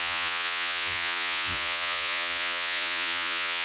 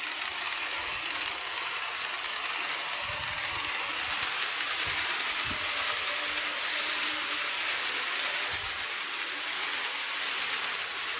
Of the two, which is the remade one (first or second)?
first